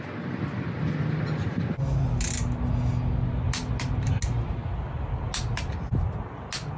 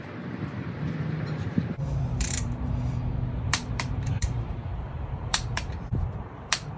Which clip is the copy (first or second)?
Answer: second